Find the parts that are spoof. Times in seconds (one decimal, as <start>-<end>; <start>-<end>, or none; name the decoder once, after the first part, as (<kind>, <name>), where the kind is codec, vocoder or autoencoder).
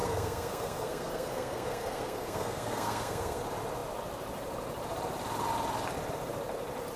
0.0-3.4 (codec, SNAC)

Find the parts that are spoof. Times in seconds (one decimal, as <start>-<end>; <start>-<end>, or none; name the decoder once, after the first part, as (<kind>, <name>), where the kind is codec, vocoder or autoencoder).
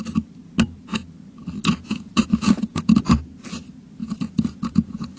1.8-3.0 (vocoder, Vocos); 4.0-5.2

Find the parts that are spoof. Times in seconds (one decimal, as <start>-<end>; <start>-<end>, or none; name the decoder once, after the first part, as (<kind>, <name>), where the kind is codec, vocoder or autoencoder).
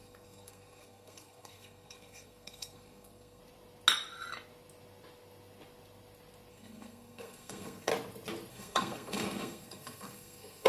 0.0-3.4 (codec, SNAC); 6.5-7.9; 8.5-10.7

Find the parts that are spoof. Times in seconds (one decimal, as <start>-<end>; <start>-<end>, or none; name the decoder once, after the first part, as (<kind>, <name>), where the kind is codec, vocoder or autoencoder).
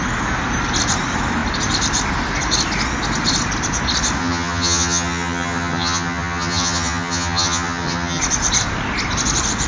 4.2-8.2 (vocoder, HiFi-GAN)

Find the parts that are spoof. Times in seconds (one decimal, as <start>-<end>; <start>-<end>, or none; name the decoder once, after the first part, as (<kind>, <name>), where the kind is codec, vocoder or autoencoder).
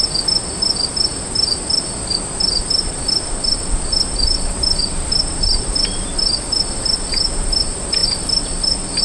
none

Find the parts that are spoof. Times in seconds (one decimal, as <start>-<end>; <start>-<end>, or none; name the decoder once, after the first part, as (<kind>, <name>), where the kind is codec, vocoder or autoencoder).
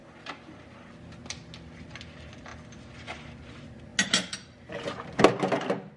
0.0-0.9 (vocoder, BigVGAN v2); 2.5-3.3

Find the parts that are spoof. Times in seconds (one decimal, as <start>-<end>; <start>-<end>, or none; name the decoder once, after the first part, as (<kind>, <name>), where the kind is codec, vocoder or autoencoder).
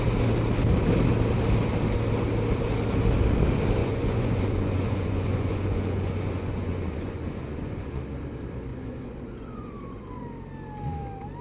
3.8-8.0 (vocoder, Vocos); 8.7-10.2